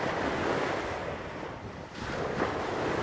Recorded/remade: recorded